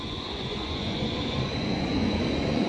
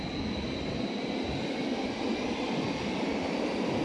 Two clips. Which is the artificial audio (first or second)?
first